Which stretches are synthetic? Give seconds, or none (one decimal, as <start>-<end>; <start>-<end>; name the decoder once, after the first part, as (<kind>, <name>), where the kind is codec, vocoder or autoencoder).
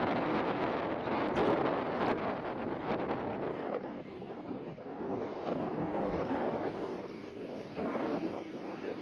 3.5-9.0 (codec, DAC)